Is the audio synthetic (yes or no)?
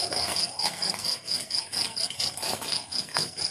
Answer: yes